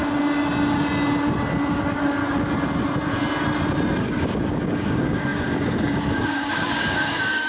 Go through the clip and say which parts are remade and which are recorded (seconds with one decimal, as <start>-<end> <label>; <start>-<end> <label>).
0.0-1.7 recorded; 1.7-2.2 remade; 2.2-4.0 recorded; 4.0-7.5 remade